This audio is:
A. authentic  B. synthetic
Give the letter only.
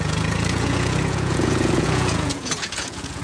B